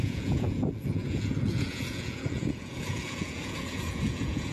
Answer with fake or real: fake